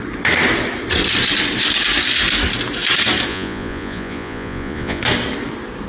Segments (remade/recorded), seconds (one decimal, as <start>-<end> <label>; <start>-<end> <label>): 0.0-3.3 recorded; 3.3-5.0 remade; 5.0-5.9 recorded